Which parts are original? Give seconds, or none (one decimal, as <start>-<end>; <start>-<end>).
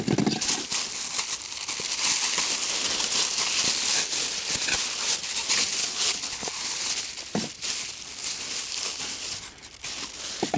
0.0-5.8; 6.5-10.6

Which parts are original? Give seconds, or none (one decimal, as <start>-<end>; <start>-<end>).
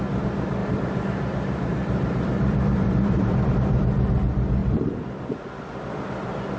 0.0-0.6; 3.5-6.6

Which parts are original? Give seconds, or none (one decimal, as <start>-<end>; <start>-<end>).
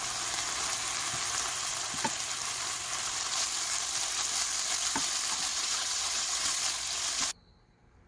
0.0-5.5; 6.6-8.1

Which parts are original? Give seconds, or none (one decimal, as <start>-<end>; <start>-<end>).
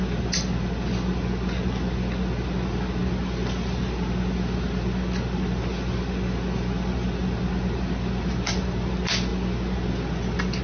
0.0-10.6